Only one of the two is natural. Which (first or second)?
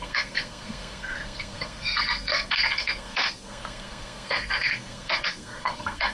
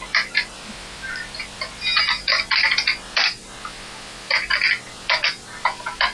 second